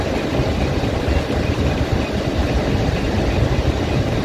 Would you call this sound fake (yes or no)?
yes